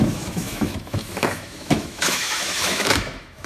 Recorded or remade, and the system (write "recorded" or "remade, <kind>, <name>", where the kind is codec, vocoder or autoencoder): remade, autoencoder, DAC-VAE